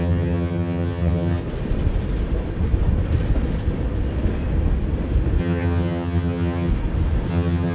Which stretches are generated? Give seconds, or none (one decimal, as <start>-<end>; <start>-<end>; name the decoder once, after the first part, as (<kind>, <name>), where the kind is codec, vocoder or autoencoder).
0.0-1.4 (vocoder, HiFi-GAN); 5.4-6.7; 7.3-7.7

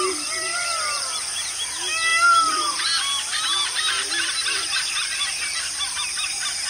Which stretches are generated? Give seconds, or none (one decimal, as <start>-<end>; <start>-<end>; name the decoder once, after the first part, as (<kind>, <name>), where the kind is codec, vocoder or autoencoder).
0.5-1.1 (vocoder, BigVGAN v2); 2.1-5.9

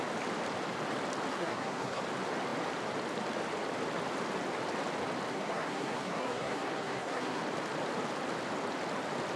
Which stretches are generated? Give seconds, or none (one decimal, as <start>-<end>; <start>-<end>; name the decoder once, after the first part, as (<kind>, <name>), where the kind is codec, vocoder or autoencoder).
1.3-2.0 (codec, SNAC); 5.3-7.4

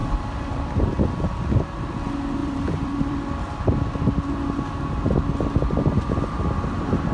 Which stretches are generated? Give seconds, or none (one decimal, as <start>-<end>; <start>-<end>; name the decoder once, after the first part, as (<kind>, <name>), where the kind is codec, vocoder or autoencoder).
0.0-0.9 (vocoder, BigVGAN v2); 2.4-3.5

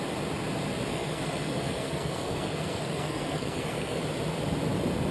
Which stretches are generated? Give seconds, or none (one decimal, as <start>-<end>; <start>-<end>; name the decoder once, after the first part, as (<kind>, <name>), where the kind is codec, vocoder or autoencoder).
0.9-4.0 (codec, SNAC)

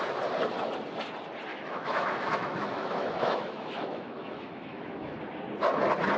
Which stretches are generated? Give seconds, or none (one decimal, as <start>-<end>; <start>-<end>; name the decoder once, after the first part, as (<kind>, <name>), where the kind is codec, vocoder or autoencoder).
1.5-5.2 (autoencoder, DAC-VAE)

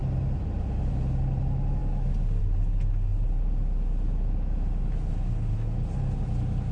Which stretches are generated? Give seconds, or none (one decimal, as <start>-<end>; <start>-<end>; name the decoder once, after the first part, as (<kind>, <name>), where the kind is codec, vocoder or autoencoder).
none

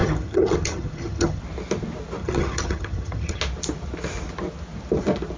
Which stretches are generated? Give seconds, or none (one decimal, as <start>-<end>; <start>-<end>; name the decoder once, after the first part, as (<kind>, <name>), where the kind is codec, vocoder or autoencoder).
0.0-1.4 (vocoder, HiFi-GAN); 2.2-3.4